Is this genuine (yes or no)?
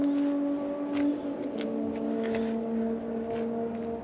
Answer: yes